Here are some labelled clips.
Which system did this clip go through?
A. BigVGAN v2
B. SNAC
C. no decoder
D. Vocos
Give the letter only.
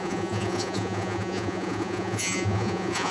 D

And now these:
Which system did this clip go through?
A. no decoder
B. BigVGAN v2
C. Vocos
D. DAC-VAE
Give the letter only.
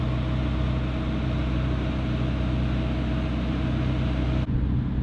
A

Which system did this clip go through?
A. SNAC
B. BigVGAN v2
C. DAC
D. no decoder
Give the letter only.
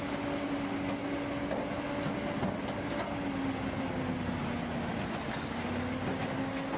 D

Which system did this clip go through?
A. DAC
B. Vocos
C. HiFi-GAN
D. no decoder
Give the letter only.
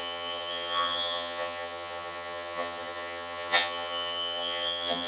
C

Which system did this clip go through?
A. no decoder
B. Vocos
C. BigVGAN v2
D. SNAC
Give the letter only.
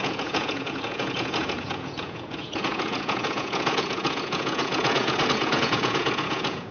B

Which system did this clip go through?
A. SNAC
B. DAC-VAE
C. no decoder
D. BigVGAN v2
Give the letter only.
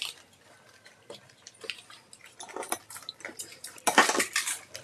D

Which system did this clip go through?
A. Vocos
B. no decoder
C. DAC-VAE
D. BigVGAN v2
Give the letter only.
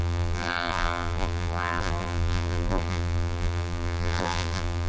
D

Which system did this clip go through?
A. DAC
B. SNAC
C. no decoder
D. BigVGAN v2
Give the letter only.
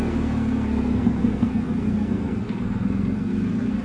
B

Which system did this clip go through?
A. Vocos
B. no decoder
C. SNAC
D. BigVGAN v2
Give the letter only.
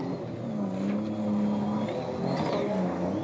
B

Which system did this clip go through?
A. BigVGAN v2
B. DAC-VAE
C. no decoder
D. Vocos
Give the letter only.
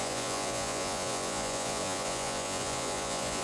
D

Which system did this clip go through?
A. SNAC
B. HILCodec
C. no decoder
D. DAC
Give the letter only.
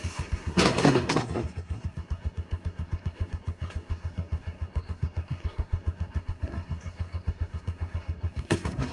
A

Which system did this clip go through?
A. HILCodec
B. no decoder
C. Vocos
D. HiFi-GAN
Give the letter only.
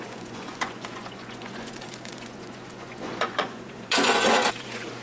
C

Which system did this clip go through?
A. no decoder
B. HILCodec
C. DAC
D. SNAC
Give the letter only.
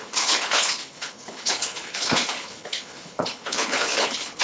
B